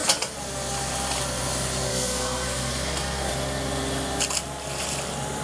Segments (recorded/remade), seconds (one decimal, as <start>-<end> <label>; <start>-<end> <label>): 0.0-1.9 recorded; 1.9-3.3 remade; 3.3-5.4 recorded